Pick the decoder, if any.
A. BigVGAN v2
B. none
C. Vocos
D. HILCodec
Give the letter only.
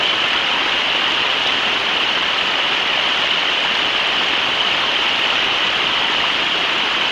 A